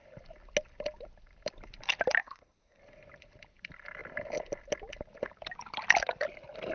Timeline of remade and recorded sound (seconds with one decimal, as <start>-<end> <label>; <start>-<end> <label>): 0.0-2.2 recorded; 2.2-2.8 remade; 2.8-6.7 recorded